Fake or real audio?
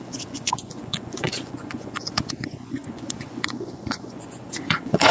fake